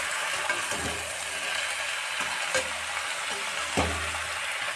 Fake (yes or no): no